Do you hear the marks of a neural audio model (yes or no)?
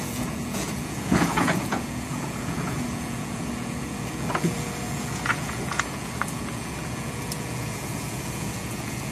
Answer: yes